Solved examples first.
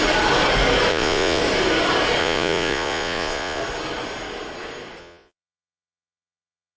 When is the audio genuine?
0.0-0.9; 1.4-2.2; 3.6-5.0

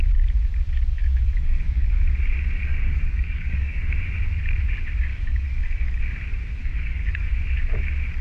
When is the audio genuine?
0.0-0.9; 1.9-2.7; 3.9-5.1; 6.0-6.6; 7.4-8.2

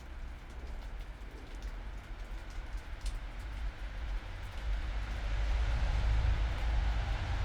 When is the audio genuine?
0.0-2.4; 6.8-7.4

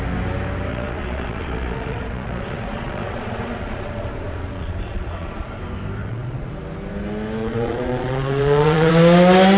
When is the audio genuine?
0.0-0.7; 5.6-6.0; 6.5-7.4; 8.9-9.6